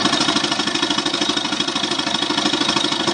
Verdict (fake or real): real